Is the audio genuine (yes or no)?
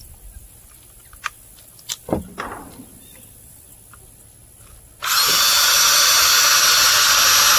yes